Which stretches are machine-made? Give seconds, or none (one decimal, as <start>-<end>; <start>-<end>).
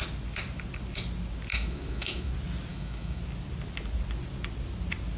1.5-2.3; 2.7-3.2